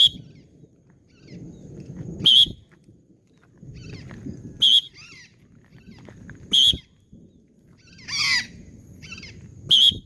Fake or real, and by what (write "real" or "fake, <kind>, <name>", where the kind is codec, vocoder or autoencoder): real